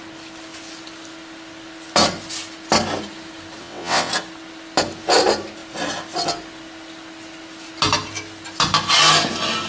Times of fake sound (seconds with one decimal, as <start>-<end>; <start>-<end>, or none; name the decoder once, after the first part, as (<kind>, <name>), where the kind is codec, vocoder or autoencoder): 3.6-4.1 (vocoder, WaveNeXt)